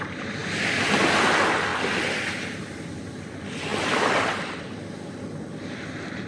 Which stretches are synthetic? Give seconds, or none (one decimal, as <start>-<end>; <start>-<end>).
none